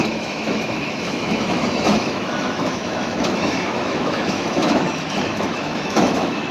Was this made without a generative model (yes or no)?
no